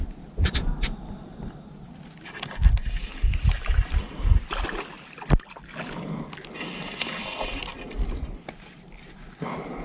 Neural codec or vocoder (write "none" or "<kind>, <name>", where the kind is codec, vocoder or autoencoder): none